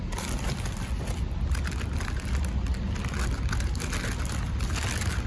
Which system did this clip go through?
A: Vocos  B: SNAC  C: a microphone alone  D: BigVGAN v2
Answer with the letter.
C